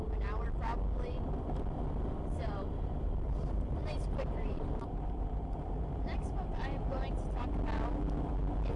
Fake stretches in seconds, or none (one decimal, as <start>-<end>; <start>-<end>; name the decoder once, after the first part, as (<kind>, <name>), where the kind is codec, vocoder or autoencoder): 2.4-7.4 (vocoder, BigVGAN v2)